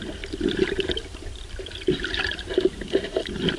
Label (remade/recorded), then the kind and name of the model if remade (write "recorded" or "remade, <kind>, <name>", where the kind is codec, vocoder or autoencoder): recorded